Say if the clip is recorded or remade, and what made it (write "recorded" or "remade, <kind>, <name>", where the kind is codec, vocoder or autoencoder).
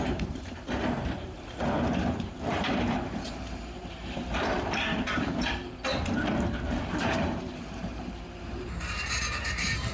remade, vocoder, BigVGAN v2